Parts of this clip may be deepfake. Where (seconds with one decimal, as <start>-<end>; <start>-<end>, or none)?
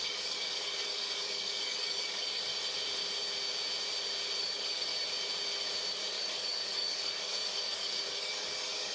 0.0-2.5; 4.4-4.9; 5.9-8.9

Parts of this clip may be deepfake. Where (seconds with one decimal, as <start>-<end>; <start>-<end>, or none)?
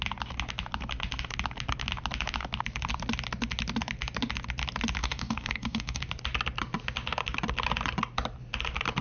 5.0-6.0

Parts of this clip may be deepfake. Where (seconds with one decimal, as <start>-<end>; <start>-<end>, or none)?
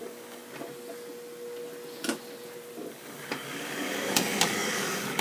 0.0-0.4; 2.9-5.2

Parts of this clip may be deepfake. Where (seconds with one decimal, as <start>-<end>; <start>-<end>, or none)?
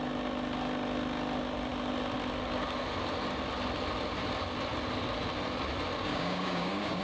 6.1-7.0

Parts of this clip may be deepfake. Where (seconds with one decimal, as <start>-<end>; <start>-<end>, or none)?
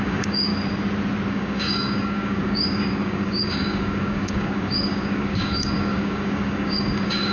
0.0-0.5; 1.3-7.3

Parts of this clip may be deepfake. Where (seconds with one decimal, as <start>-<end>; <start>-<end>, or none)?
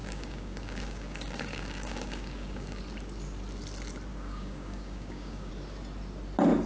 0.0-2.8; 4.1-5.5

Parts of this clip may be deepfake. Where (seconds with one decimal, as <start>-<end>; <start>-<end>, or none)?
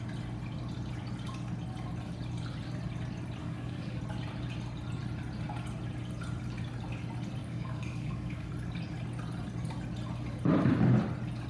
3.4-4.0; 7.4-8.5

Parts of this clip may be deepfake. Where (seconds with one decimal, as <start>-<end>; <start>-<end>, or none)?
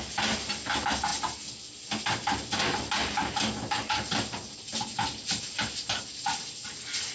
none